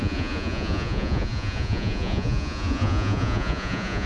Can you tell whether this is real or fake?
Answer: fake